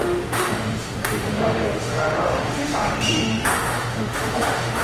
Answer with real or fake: fake